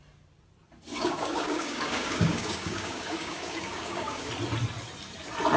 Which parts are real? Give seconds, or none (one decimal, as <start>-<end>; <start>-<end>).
0.0-0.9; 4.3-5.6